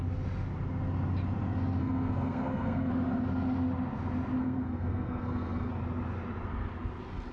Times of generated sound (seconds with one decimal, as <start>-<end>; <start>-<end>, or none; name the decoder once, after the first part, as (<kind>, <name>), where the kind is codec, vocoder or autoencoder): 1.8-2.9 (codec, SNAC); 4.4-5.7